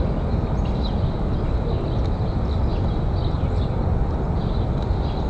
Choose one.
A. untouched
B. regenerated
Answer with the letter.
A